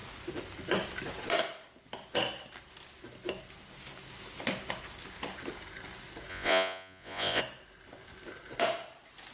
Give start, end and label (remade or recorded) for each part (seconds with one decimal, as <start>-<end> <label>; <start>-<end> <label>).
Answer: 0.0-6.3 recorded; 6.3-7.4 remade; 7.4-9.3 recorded